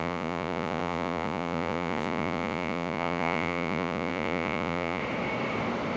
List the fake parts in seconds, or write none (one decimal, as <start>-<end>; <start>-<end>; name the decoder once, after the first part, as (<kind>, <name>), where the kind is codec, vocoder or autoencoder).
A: 0.0-5.0 (vocoder, Vocos)